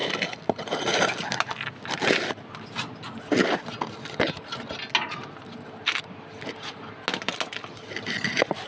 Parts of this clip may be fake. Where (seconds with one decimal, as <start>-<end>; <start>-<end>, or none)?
none